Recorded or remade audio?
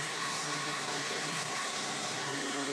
remade